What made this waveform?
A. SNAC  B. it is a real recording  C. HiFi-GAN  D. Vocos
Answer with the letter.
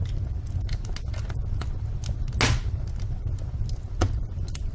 B